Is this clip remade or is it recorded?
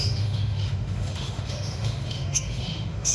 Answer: remade